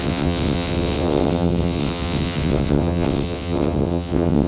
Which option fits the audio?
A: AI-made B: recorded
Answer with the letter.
A